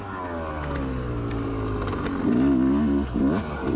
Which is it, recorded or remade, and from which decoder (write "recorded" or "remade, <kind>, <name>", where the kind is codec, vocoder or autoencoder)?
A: recorded